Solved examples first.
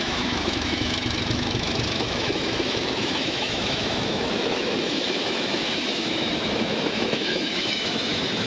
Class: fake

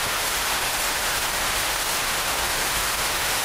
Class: fake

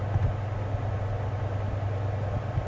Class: real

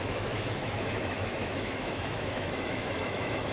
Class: fake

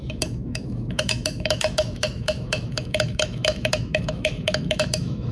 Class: fake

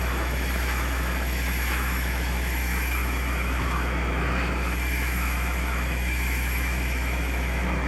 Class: fake